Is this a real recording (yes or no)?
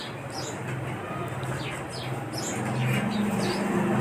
yes